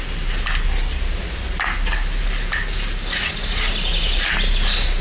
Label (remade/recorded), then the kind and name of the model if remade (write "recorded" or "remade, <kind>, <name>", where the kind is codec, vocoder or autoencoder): recorded